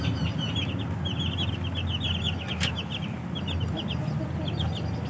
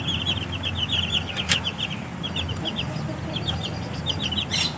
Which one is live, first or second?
first